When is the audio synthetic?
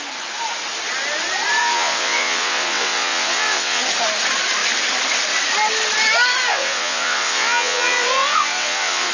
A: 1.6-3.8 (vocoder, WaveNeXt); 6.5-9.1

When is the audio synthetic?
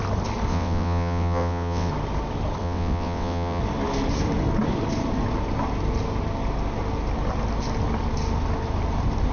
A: 0.5-1.9 (vocoder, WaveNeXt); 2.6-3.6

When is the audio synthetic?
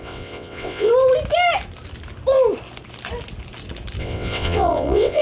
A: 0.0-0.9 (vocoder, WaveNeXt); 4.0-5.2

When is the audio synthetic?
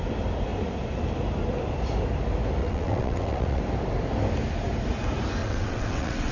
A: 2.6-3.6 (vocoder, WaveNeXt); 5.4-6.3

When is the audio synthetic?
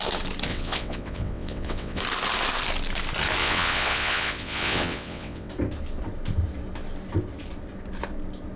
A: 0.5-2.0 (vocoder, WaveNeXt); 3.4-5.5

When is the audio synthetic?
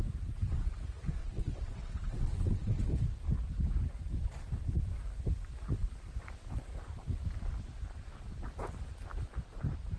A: 1.2-2.8 (vocoder, WaveNeXt)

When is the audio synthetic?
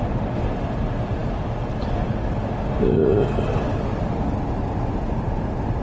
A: none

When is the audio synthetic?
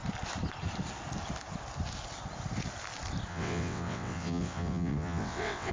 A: 3.3-5.7 (vocoder, WaveNeXt)